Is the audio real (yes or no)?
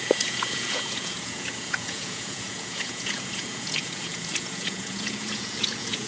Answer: no